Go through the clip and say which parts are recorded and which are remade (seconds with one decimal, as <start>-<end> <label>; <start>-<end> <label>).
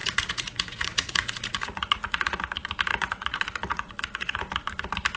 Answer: 0.0-2.4 remade; 2.4-2.9 recorded; 2.9-4.4 remade; 4.4-5.2 recorded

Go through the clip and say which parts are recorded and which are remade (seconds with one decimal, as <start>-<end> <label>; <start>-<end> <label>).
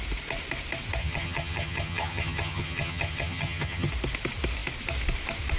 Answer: 0.0-1.0 recorded; 1.0-3.9 remade; 3.9-5.6 recorded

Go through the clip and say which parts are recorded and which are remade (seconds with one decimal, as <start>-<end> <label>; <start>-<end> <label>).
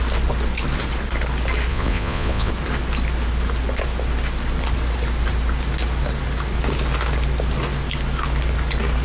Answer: 0.0-1.7 recorded; 1.7-2.5 remade; 2.5-9.0 recorded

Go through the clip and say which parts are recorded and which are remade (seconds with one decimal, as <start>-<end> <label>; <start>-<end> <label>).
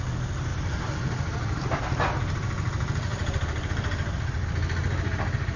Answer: 0.0-0.5 recorded; 0.5-1.8 remade; 1.8-3.1 recorded; 3.1-3.7 remade; 3.7-5.6 recorded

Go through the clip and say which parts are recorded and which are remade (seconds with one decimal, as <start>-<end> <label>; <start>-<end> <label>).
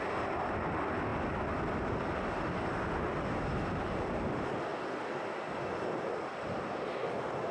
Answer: 0.0-7.5 recorded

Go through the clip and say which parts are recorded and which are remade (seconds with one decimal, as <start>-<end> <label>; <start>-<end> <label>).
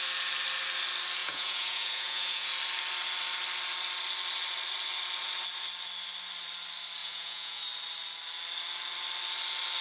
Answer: 0.0-1.2 recorded; 1.2-2.5 remade; 2.5-7.0 recorded; 7.0-7.6 remade; 7.6-9.8 recorded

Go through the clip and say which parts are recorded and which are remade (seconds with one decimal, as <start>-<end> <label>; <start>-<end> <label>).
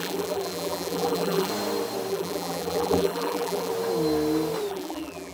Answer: 0.0-1.5 remade; 1.5-2.1 recorded; 2.1-3.7 remade; 3.7-4.7 recorded; 4.7-5.3 remade